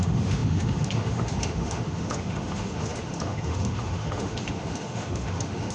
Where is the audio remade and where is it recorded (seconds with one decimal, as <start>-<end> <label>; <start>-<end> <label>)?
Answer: 0.0-5.7 remade